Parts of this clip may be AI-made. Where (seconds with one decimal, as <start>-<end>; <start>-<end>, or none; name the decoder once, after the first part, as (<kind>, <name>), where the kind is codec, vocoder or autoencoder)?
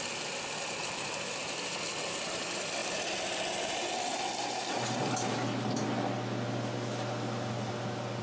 none